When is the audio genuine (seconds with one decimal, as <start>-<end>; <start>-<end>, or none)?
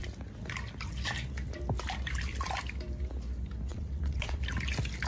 0.0-3.7; 4.4-5.1